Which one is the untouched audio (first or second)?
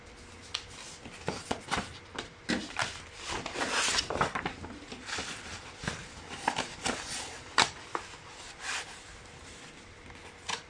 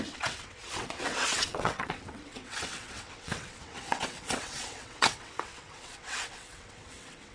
first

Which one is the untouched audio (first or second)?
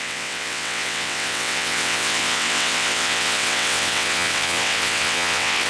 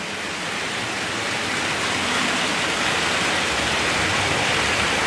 second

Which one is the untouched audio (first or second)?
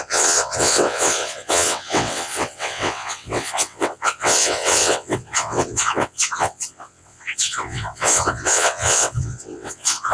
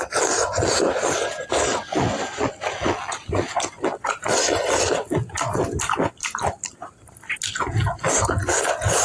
second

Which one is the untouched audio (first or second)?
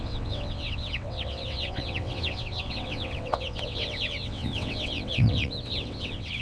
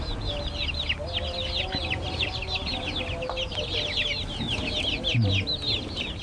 second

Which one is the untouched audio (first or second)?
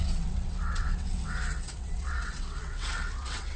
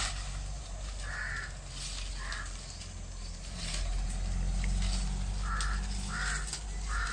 second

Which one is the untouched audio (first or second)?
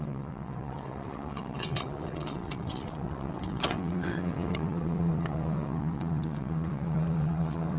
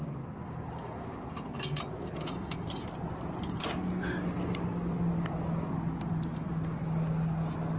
second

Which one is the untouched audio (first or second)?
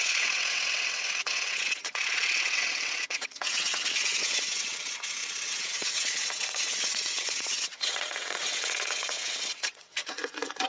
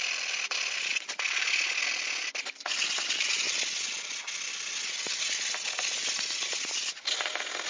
second